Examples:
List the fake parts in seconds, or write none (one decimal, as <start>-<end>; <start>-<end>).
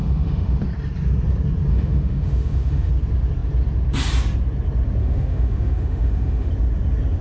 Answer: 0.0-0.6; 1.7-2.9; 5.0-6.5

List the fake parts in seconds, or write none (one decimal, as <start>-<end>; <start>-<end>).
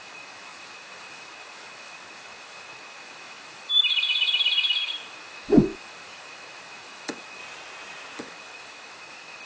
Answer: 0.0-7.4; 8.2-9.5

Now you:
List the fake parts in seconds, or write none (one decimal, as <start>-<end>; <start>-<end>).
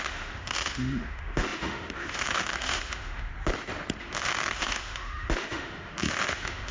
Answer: 0.0-3.3; 4.0-6.7